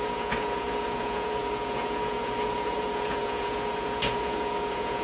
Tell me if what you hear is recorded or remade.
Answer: remade